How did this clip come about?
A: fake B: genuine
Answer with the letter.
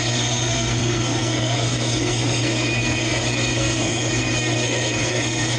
A